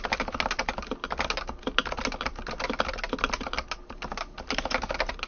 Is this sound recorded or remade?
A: recorded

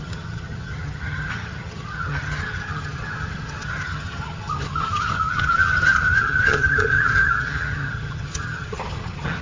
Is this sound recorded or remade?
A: remade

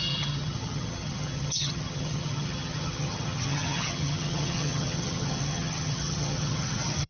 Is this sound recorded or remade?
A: remade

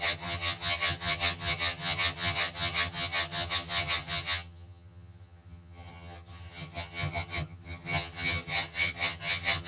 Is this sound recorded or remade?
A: remade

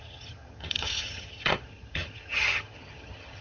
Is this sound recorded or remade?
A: remade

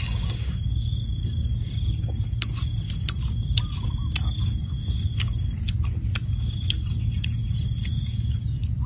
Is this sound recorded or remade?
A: recorded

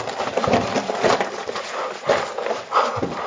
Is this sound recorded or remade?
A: recorded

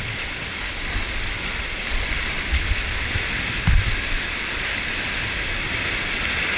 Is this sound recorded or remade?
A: recorded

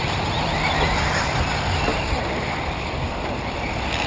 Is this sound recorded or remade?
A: recorded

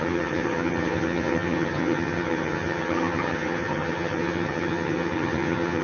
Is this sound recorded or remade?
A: remade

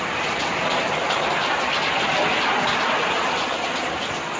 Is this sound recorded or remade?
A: recorded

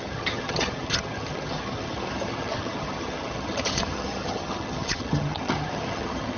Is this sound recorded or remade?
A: remade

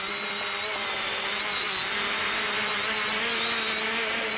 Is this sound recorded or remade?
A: recorded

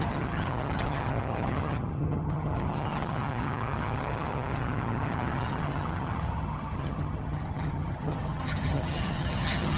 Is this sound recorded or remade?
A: remade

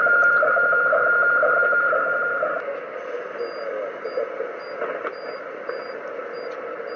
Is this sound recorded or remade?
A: recorded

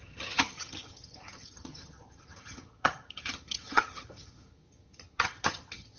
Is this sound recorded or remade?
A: remade